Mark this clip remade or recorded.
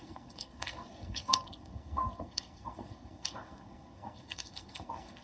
remade